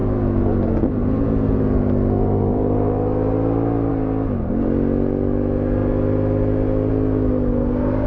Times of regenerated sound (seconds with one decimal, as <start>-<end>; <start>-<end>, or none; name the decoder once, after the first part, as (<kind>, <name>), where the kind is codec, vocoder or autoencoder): none